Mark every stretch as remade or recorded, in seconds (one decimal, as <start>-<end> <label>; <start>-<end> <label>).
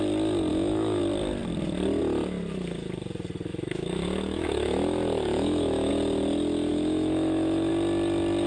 0.0-0.5 recorded; 0.5-1.0 remade; 1.0-3.5 recorded; 3.5-5.9 remade; 5.9-6.7 recorded; 6.7-7.7 remade; 7.7-8.5 recorded